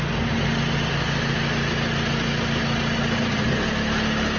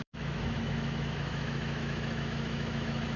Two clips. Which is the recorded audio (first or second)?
first